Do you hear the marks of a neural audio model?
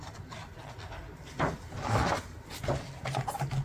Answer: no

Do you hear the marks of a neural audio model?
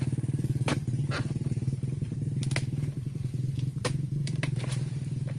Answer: yes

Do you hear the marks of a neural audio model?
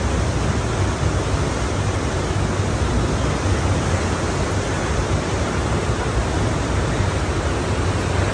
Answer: no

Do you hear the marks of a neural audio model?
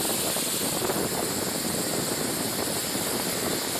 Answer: no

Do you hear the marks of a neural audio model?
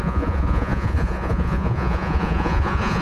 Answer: yes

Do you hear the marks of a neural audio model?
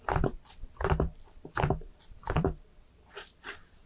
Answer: yes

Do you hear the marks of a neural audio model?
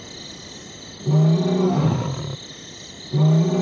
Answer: no